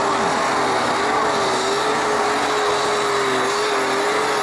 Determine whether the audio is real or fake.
real